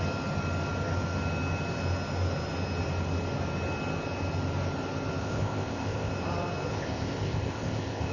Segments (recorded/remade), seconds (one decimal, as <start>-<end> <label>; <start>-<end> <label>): 0.0-5.2 recorded; 5.2-6.1 remade; 6.1-6.7 recorded; 6.7-8.1 remade